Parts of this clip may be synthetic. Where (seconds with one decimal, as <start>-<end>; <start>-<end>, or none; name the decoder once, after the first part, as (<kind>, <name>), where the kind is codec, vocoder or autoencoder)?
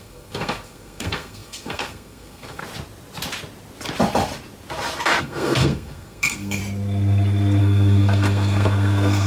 0.0-2.6 (codec, SNAC); 5.2-6.6; 7.6-9.3